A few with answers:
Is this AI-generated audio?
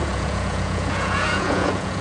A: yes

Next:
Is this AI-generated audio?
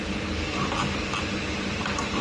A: no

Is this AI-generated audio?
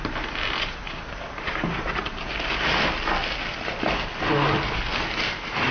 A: no